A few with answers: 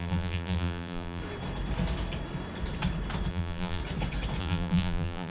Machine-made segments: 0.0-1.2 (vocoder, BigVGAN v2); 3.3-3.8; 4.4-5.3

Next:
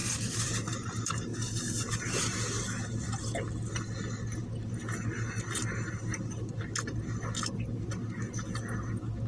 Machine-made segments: 0.0-0.9 (vocoder, BigVGAN v2)

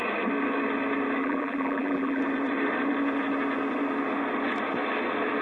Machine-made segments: 1.2-2.2 (vocoder, BigVGAN v2)

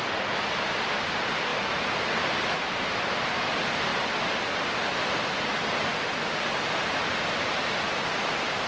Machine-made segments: 0.0-3.9 (vocoder, BigVGAN v2); 4.5-5.5; 7.1-8.7

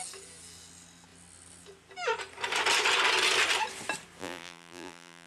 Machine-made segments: 4.2-5.3 (vocoder, BigVGAN v2)